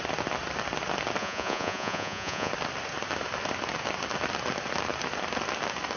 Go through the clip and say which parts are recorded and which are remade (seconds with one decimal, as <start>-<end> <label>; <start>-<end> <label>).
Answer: 0.0-1.2 recorded; 1.2-2.5 remade; 2.5-6.0 recorded